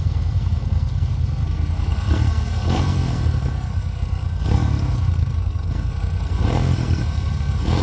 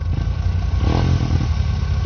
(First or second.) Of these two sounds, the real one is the second